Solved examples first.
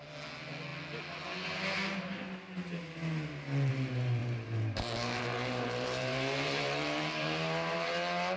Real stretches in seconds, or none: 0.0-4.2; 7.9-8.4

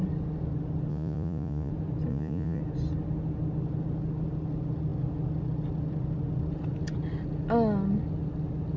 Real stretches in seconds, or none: 0.0-0.9; 1.7-2.1; 2.6-8.8

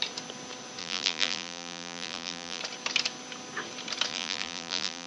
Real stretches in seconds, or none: 0.0-0.8; 2.6-4.1

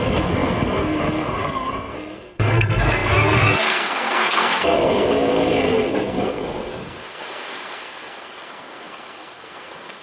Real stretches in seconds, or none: none